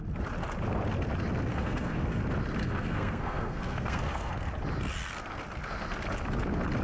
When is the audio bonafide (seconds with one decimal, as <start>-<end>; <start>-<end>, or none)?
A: 0.0-1.5; 2.2-2.6; 4.3-6.8